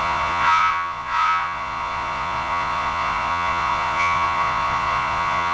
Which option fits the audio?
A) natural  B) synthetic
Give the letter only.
B